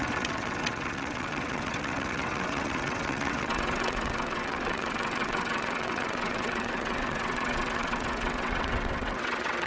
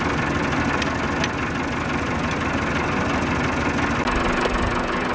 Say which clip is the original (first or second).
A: second